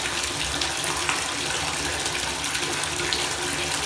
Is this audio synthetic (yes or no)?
no